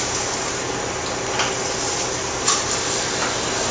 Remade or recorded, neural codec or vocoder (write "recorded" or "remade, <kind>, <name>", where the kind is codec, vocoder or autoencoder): recorded